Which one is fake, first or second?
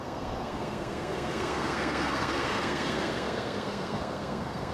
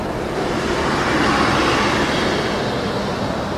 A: first